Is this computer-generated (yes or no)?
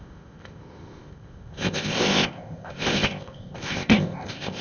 yes